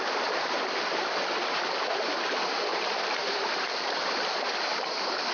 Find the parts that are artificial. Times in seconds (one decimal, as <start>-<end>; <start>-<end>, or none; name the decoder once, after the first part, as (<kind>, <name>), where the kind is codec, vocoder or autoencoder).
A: 2.7-4.1 (vocoder, BigVGAN v2)